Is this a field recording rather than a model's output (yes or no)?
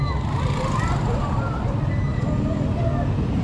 yes